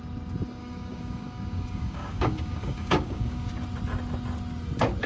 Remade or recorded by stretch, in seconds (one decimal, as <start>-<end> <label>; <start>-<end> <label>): 0.0-0.6 recorded; 0.6-3.5 remade; 3.5-5.1 recorded